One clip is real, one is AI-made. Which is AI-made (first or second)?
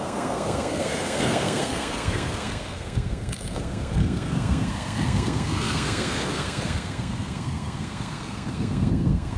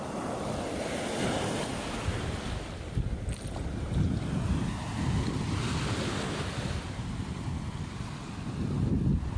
first